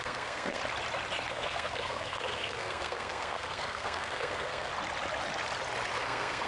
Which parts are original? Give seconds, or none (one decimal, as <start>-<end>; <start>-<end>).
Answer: 0.6-1.3; 4.7-6.0